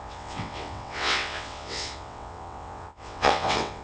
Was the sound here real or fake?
fake